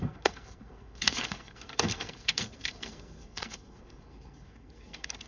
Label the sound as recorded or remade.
remade